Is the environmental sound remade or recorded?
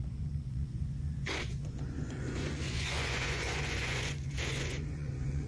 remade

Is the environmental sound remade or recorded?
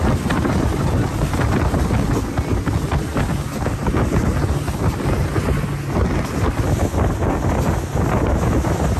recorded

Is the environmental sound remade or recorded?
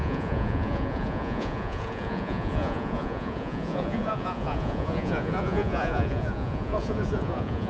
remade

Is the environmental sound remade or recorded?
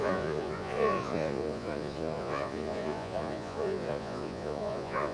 remade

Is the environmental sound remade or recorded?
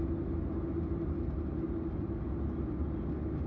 recorded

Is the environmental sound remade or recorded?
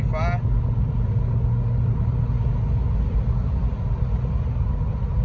recorded